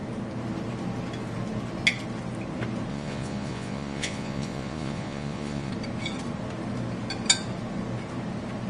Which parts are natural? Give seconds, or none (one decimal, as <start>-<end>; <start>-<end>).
0.0-2.9; 5.7-8.7